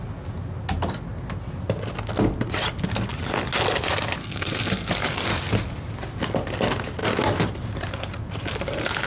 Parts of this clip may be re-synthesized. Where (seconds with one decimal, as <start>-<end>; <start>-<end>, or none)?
4.2-4.9